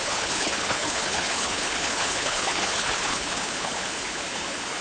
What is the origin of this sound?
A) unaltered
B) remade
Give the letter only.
B